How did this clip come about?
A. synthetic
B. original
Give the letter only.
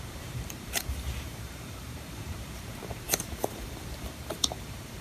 A